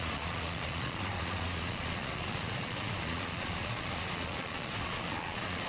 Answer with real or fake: fake